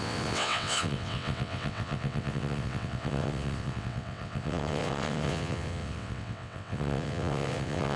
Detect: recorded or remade remade